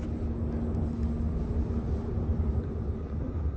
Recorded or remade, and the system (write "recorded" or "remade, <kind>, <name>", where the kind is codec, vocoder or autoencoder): recorded